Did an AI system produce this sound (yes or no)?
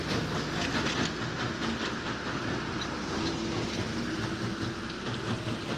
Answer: no